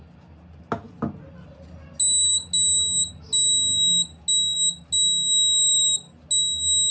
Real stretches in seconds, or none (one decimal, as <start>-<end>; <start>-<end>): 0.0-6.9